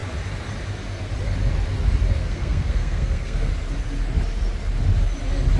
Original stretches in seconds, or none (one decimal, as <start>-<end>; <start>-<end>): 0.0-2.2; 3.5-5.6